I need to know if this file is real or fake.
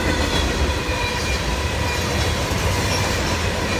real